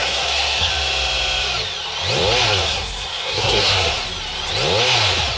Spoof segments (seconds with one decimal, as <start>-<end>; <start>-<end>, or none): 0.0-0.7; 2.5-3.9